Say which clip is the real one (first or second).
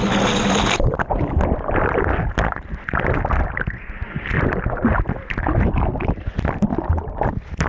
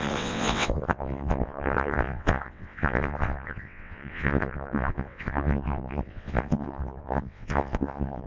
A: first